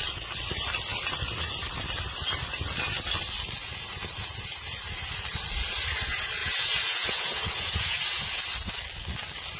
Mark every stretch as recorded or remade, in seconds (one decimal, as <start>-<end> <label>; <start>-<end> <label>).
0.0-3.6 recorded; 3.6-4.1 remade; 4.1-6.4 recorded; 6.4-8.4 remade; 8.4-9.6 recorded